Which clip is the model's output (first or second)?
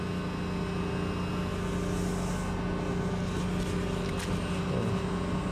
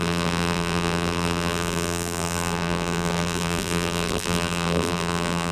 second